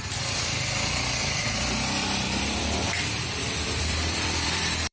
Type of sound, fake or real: fake